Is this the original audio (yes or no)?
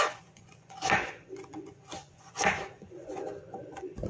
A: no